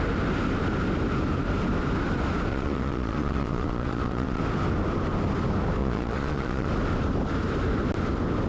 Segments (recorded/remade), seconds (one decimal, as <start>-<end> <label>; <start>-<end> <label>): 0.0-2.5 recorded; 2.5-4.4 remade; 4.4-5.8 recorded; 5.8-6.7 remade; 6.7-8.5 recorded